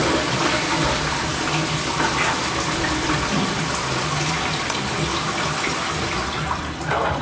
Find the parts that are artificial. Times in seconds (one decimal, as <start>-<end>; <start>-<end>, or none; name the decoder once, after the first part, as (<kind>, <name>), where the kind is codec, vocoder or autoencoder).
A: none